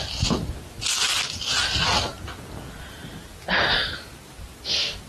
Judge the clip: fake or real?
real